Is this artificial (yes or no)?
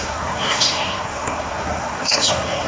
yes